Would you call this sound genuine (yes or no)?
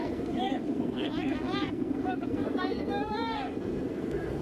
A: no